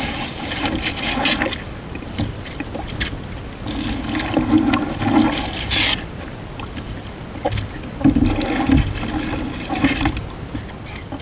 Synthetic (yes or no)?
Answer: no